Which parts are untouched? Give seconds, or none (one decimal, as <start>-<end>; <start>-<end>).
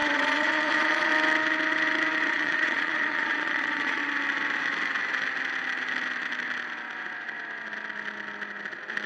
1.1-2.3; 4.0-9.1